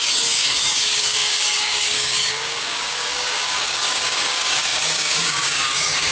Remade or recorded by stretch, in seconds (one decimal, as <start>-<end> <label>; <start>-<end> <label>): 0.0-6.1 remade